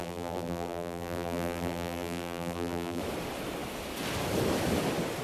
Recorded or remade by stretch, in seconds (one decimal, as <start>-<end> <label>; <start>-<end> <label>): 0.0-3.0 remade; 3.0-5.2 recorded